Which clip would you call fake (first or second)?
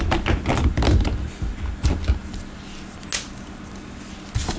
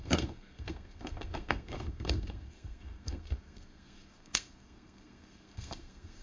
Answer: second